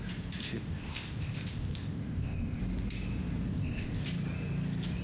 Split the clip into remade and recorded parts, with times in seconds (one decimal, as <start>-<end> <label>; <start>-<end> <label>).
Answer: 0.0-0.4 recorded; 0.4-2.6 remade; 2.6-3.5 recorded; 3.5-4.0 remade; 4.0-5.0 recorded